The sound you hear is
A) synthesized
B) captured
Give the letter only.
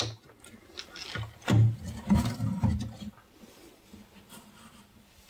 B